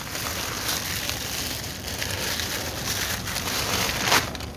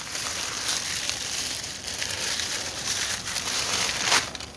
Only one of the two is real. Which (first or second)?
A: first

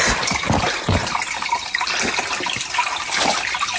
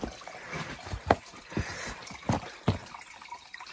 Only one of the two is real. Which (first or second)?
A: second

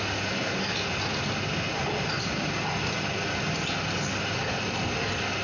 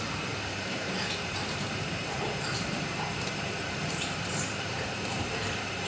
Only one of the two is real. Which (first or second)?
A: first